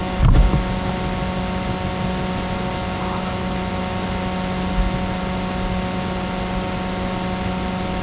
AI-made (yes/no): no